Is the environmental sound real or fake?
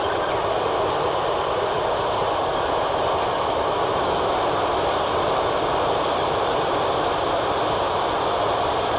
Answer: real